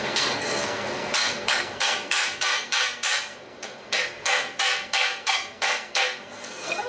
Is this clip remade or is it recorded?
remade